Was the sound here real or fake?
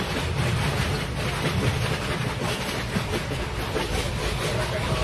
real